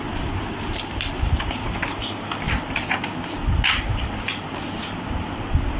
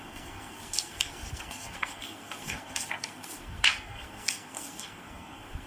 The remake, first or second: second